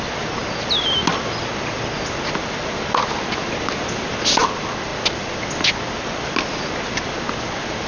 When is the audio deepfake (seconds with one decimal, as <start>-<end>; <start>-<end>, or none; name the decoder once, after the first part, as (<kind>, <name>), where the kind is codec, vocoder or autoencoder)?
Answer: none